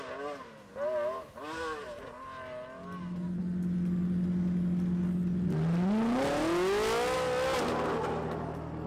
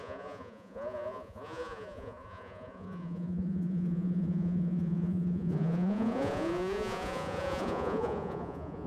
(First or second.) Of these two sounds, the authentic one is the first